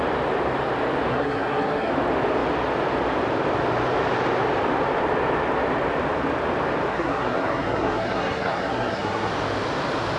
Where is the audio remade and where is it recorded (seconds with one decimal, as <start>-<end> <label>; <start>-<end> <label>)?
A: 0.0-1.1 recorded; 1.1-1.9 remade; 1.9-6.9 recorded; 6.9-9.3 remade; 9.3-10.2 recorded